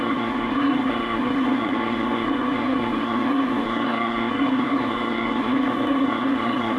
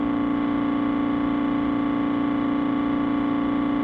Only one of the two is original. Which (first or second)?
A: second